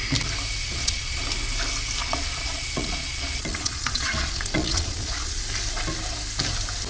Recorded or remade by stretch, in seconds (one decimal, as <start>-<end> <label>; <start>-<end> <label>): 0.0-0.6 recorded; 0.6-1.2 remade; 1.2-2.0 recorded; 2.0-5.4 remade; 5.4-6.9 recorded